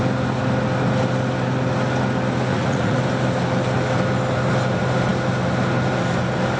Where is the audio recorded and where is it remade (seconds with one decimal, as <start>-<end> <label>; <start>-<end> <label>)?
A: 0.0-2.5 recorded; 2.5-3.0 remade; 3.0-6.6 recorded